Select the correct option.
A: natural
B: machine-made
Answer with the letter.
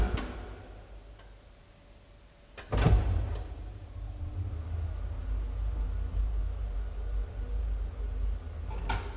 A